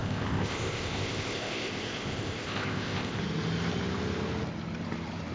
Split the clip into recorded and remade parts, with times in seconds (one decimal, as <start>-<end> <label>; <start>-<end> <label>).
0.0-3.2 remade; 3.2-5.3 recorded